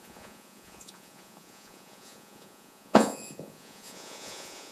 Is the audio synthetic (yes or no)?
yes